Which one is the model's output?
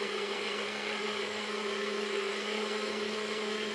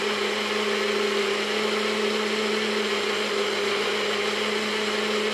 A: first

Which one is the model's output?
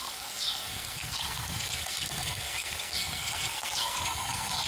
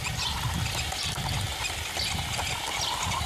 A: first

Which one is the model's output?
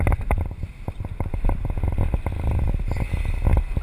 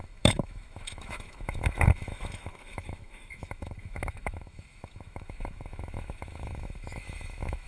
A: second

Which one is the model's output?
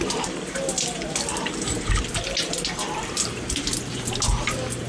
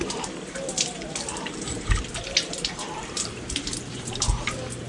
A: second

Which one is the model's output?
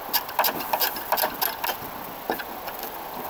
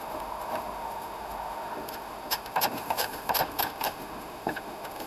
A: second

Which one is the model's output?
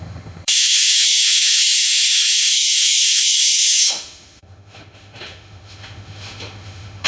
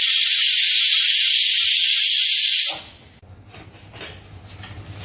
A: first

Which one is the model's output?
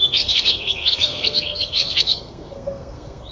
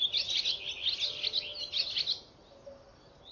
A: first